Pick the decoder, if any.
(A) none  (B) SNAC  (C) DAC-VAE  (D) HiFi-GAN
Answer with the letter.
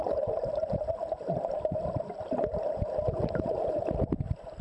A